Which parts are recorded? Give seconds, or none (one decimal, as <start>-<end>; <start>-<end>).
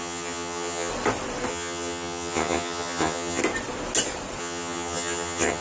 0.9-1.5; 3.4-4.4